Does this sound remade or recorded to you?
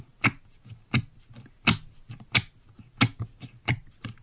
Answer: recorded